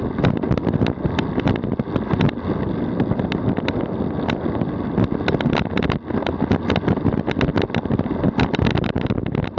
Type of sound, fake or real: real